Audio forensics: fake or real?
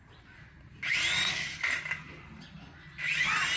real